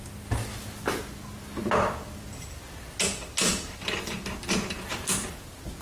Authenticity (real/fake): real